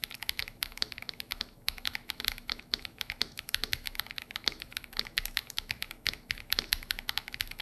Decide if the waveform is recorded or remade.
remade